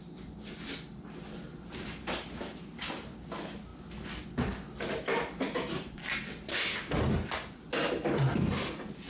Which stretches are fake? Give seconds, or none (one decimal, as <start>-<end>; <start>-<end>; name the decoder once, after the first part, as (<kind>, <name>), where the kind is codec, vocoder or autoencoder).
6.5-7.0 (autoencoder, DAC-VAE)